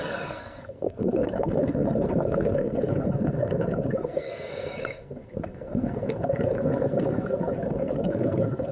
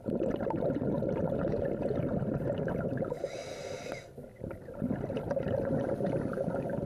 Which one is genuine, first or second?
second